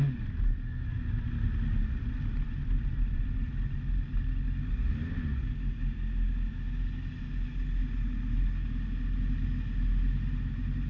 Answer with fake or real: real